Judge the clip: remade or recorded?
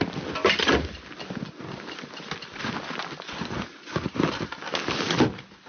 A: recorded